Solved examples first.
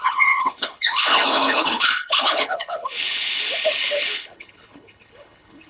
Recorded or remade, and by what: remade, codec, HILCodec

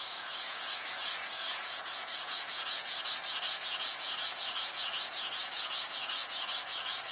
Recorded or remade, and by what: remade, vocoder, Vocos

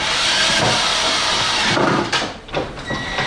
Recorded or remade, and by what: recorded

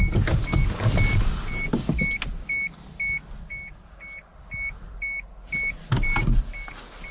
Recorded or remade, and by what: recorded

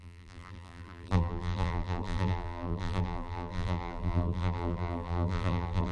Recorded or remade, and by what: remade, vocoder, BigVGAN v2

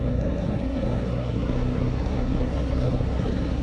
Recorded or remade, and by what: remade, codec, SNAC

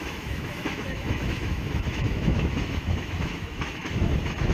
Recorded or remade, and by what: remade, autoencoder, DAC-VAE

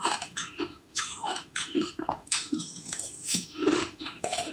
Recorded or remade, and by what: remade, autoencoder, DAC-VAE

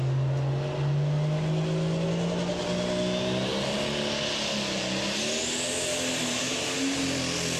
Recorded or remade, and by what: recorded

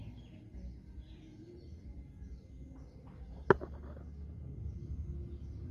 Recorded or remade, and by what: recorded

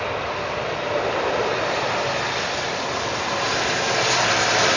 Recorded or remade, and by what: recorded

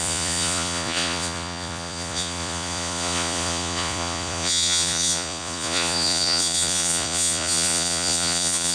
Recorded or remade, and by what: remade, vocoder, Vocos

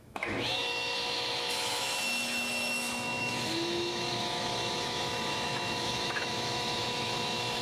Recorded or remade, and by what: remade, autoencoder, DAC-VAE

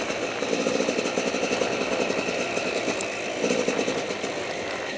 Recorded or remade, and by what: recorded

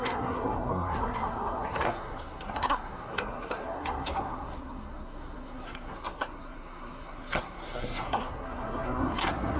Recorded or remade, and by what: remade, codec, SNAC